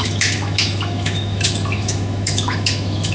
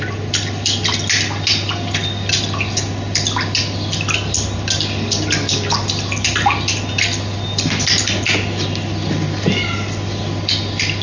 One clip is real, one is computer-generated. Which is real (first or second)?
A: second